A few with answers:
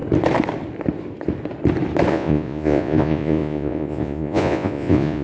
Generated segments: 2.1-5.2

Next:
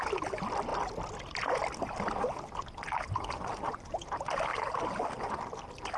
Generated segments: none

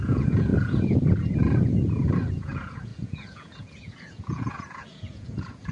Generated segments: 0.0-0.5; 2.4-5.7

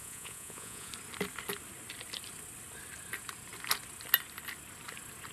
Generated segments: 0.0-0.9

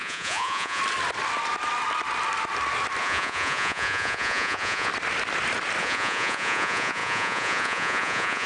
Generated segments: 0.0-0.8; 3.0-4.9; 5.8-8.5

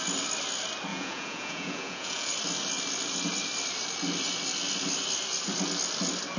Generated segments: 0.9-2.3

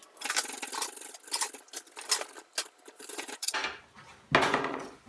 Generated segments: 3.1-3.6; 4.4-5.1

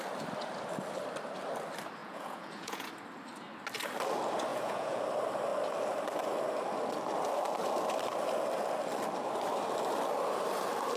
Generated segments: 2.0-2.9; 4.5-5.0